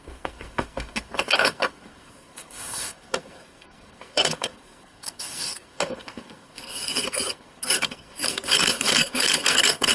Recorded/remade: remade